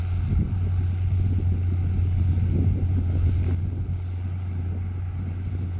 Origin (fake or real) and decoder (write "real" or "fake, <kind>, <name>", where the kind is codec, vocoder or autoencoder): real